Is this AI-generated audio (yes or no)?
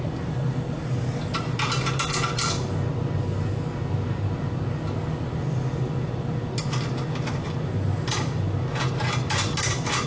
no